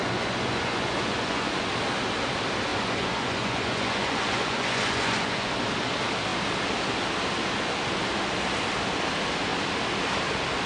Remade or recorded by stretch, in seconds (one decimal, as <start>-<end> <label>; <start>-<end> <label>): 0.0-1.7 remade; 1.7-2.7 recorded; 2.7-5.5 remade; 5.5-10.7 recorded